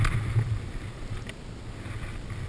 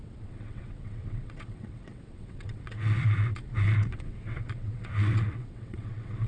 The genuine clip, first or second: first